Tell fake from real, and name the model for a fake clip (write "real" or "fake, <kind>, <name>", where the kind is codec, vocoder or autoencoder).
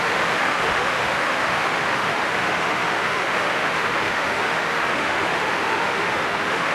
fake, autoencoder, DAC-VAE